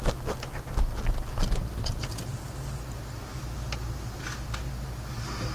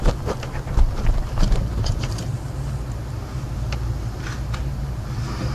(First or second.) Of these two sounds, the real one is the first